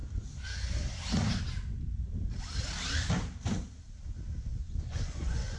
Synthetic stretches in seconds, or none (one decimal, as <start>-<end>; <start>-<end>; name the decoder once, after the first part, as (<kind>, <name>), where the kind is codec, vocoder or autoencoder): 4.5-5.6 (vocoder, Vocos)